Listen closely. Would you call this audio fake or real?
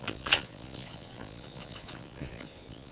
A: fake